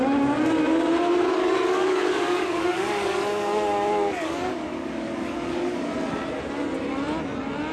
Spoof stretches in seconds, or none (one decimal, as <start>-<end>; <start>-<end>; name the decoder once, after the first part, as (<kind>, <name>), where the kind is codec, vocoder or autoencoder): 1.3-5.9 (codec, DAC)